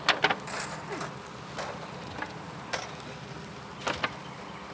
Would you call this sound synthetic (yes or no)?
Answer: no